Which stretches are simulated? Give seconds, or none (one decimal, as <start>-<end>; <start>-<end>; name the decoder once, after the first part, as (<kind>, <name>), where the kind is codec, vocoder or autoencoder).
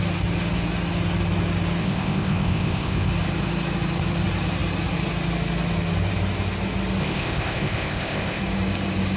1.8-3.1 (codec, ZipCodec); 7.0-8.4